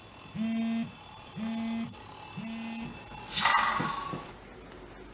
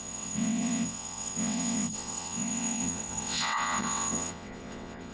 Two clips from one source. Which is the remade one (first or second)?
second